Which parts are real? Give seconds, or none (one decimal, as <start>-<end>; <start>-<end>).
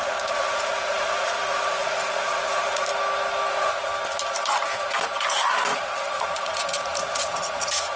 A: 2.9-3.5; 3.9-5.7